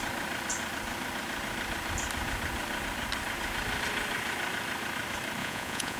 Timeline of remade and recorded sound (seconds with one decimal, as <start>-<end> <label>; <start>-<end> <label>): 0.0-5.4 recorded; 5.4-6.0 remade